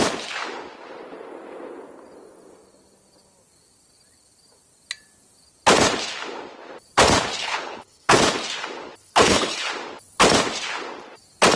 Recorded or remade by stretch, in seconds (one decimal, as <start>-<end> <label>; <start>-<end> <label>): 0.0-7.4 recorded; 7.4-8.2 remade; 8.2-9.0 recorded; 9.0-9.7 remade; 9.7-11.6 recorded